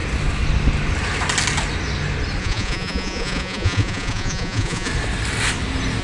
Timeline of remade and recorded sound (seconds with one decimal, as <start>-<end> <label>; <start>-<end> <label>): 0.0-2.4 recorded; 2.4-4.9 remade; 4.9-6.0 recorded